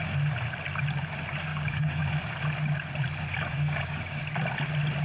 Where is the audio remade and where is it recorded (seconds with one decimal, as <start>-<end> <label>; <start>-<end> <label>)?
0.0-1.5 recorded; 1.5-2.2 remade; 2.2-3.5 recorded; 3.5-4.2 remade; 4.2-5.0 recorded